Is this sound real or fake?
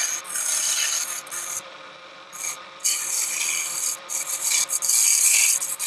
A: real